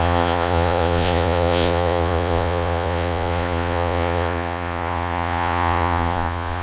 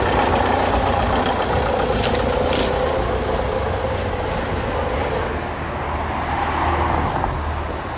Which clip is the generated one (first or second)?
first